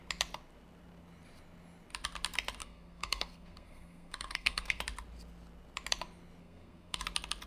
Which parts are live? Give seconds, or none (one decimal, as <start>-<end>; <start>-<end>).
0.0-2.6; 4.8-6.4; 7.0-7.5